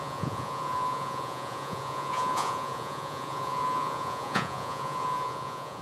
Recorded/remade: remade